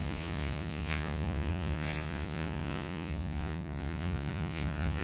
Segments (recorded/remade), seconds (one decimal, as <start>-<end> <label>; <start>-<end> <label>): 0.0-5.0 remade